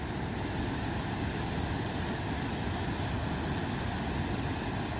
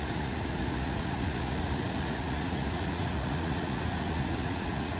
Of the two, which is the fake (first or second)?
second